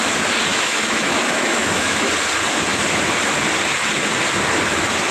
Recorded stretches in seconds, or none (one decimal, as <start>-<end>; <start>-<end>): 0.0-0.5; 2.1-5.1